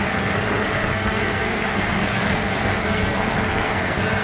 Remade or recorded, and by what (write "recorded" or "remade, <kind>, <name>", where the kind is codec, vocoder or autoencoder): remade, codec, SNAC